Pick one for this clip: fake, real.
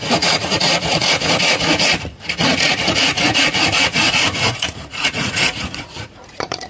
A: fake